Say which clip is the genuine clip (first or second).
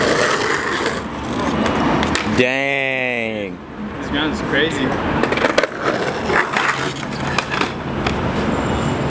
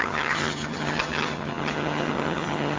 first